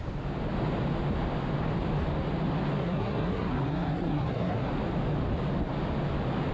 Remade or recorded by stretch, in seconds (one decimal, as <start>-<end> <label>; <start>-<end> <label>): 0.0-2.8 recorded; 2.8-4.7 remade; 4.7-6.5 recorded